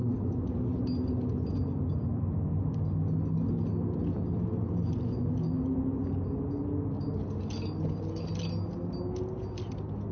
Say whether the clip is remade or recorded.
recorded